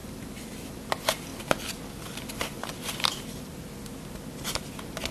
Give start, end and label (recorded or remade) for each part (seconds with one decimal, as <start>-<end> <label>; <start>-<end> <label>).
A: 0.0-0.8 remade; 0.8-1.3 recorded; 1.3-3.6 remade; 3.6-5.1 recorded